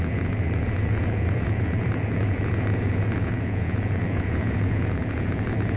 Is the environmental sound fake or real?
fake